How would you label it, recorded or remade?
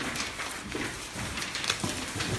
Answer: recorded